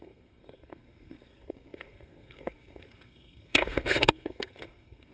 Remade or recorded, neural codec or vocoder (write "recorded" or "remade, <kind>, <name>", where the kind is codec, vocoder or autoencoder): remade, codec, SNAC